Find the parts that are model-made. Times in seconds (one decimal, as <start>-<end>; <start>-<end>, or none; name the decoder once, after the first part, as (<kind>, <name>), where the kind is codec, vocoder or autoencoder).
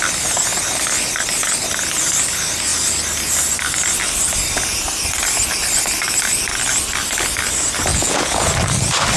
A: 7.9-8.5 (vocoder, Vocos)